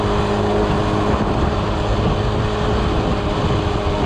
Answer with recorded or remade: recorded